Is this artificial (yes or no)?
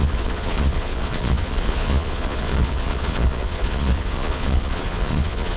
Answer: yes